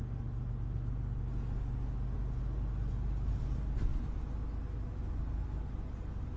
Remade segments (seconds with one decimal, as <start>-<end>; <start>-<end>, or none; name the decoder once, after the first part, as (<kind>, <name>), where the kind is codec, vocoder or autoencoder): none